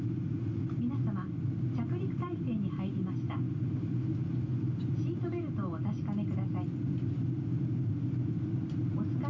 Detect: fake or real real